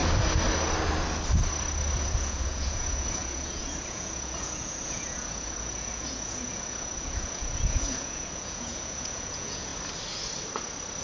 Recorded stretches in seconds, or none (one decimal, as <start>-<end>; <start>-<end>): 0.0-2.0; 9.7-11.0